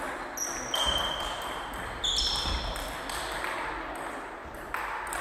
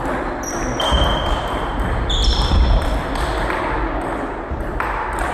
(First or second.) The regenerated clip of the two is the second